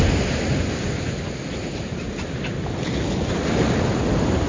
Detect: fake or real real